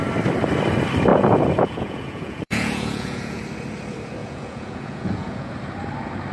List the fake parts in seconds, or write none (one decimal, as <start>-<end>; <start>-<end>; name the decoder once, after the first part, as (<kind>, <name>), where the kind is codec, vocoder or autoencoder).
1.1-3.4 (vocoder, Vocos); 4.2-5.5